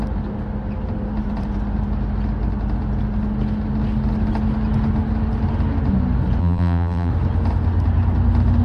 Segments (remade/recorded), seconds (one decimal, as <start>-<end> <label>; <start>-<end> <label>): 0.0-6.4 recorded; 6.4-7.1 remade; 7.1-8.6 recorded